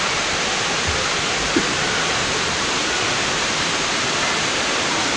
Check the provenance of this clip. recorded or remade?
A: recorded